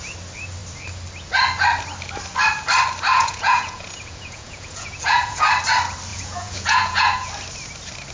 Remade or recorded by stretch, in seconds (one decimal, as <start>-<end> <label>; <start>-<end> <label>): 0.0-3.1 recorded; 3.1-5.5 remade; 5.5-6.1 recorded; 6.1-7.3 remade; 7.3-8.1 recorded